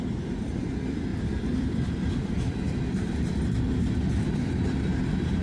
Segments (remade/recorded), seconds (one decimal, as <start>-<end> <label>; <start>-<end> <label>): 0.0-5.4 remade